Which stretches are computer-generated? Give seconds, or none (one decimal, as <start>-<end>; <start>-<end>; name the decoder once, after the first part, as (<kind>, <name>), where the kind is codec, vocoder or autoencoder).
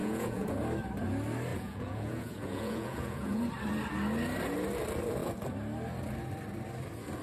0.0-0.6 (vocoder, Vocos); 1.5-3.4